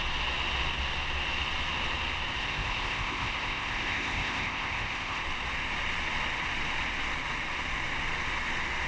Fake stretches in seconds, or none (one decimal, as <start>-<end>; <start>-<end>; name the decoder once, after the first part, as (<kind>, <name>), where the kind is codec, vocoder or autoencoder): 2.4-5.2 (codec, ZipCodec)